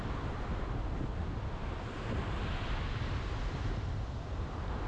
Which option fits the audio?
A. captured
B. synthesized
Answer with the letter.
A